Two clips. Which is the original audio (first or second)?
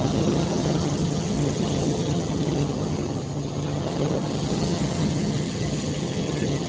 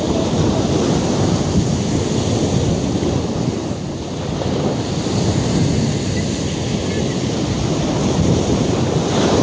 second